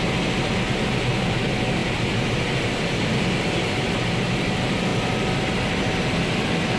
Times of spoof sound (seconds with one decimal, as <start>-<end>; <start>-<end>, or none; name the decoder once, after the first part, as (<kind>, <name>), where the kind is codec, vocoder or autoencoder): none